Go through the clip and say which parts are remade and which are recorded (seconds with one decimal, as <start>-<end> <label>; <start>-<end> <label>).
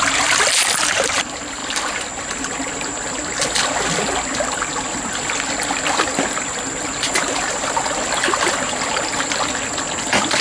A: 0.0-10.4 recorded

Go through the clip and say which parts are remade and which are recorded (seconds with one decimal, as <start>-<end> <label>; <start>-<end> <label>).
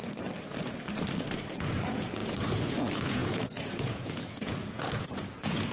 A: 0.0-1.5 recorded; 1.5-5.7 remade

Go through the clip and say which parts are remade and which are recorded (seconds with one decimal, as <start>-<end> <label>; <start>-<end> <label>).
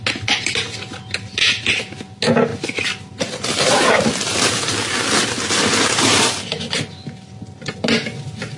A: 0.0-8.6 recorded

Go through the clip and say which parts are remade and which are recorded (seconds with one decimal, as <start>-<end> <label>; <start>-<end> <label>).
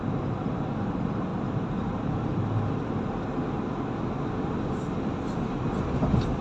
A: 0.0-6.4 recorded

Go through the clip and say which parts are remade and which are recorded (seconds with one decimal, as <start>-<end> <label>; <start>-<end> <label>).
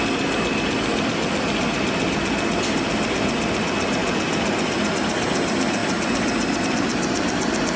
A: 0.0-7.8 recorded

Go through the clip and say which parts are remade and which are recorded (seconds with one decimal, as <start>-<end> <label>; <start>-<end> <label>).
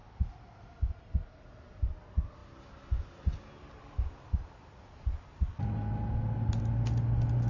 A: 0.0-7.5 recorded